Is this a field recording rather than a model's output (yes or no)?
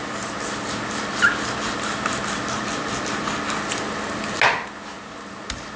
yes